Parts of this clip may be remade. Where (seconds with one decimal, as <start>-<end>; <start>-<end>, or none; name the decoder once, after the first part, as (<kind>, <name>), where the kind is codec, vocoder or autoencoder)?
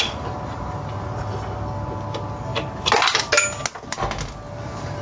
none